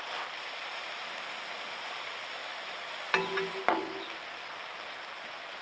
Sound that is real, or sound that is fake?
real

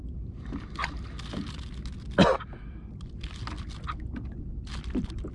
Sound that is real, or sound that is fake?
real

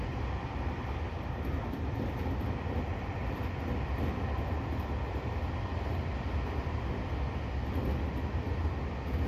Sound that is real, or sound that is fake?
real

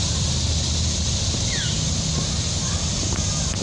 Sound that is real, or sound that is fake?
real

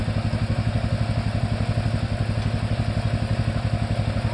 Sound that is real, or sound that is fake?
real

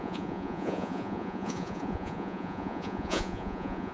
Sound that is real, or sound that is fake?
fake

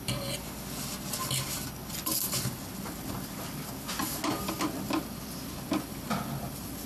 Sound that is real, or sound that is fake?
real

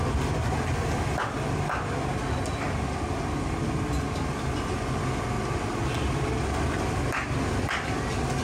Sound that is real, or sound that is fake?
real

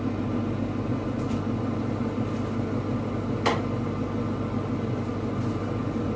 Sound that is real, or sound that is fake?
real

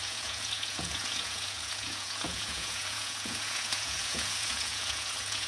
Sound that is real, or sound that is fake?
fake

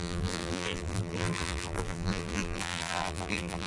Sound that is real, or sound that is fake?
fake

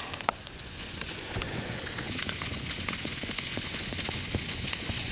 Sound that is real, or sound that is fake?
fake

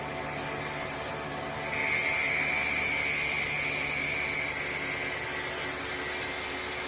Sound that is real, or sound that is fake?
real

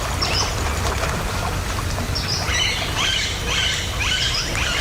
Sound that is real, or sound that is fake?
real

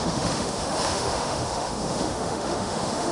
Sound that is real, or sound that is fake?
fake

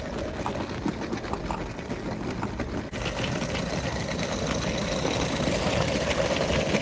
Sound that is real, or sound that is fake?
real